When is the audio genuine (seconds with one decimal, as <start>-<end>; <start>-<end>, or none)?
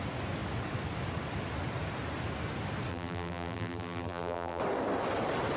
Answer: 0.0-2.9; 4.6-5.6